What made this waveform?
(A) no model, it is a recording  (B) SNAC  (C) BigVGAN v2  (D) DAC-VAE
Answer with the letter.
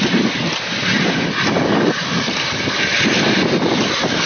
A